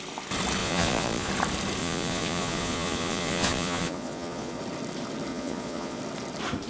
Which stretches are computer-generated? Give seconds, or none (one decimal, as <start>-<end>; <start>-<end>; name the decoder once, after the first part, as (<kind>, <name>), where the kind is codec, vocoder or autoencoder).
0.6-1.3 (vocoder, Vocos); 1.8-4.6; 5.3-6.0